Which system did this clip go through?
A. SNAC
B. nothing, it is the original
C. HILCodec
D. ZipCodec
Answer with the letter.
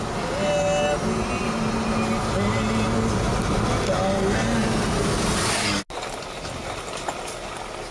B